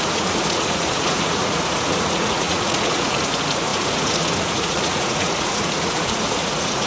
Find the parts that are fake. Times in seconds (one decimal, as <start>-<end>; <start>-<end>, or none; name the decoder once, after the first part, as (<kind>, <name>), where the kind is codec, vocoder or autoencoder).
0.0-6.9 (vocoder, Vocos)